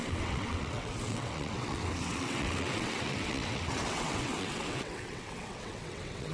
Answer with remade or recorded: remade